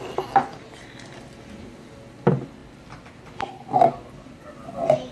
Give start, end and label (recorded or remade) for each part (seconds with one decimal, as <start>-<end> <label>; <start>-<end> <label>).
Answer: 0.0-5.1 recorded